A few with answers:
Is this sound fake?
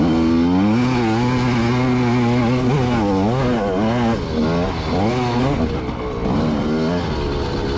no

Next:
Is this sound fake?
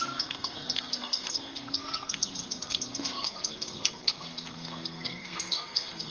yes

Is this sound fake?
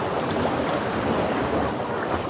yes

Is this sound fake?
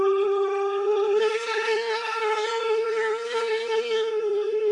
yes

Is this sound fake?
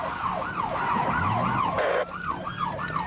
no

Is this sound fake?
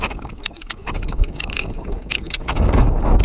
yes